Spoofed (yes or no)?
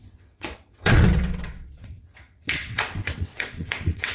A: yes